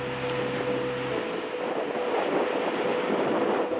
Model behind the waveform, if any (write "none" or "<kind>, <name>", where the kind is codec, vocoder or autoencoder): none